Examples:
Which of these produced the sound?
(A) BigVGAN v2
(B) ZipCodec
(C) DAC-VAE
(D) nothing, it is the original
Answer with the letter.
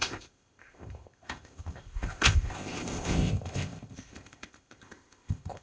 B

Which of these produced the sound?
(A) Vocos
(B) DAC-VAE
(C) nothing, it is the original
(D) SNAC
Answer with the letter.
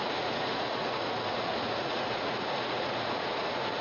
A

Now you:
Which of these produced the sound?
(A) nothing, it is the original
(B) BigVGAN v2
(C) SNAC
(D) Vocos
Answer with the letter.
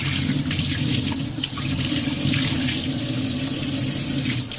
A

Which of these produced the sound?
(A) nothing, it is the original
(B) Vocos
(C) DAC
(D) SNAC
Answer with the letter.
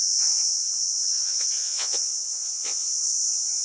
B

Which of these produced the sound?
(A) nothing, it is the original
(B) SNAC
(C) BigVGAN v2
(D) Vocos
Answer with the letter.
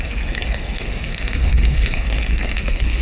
B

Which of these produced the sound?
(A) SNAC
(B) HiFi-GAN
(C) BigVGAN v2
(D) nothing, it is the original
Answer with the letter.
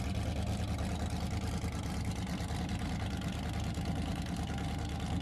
D